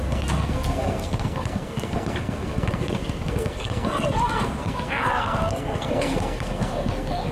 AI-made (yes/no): yes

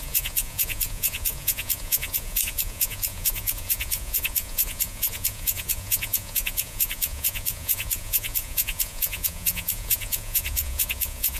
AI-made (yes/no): yes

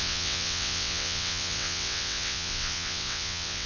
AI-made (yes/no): yes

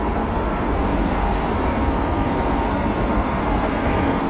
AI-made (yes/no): yes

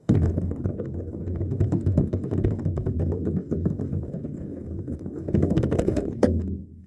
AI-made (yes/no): yes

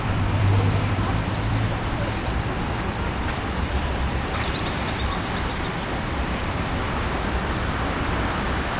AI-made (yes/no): yes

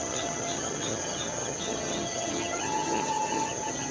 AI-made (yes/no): yes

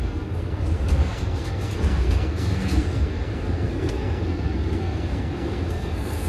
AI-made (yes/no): yes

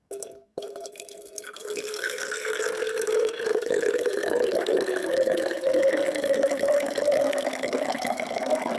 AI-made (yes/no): yes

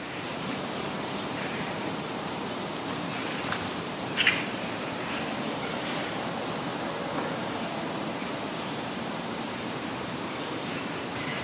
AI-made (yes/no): yes